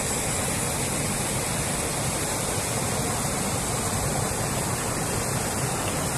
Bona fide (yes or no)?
yes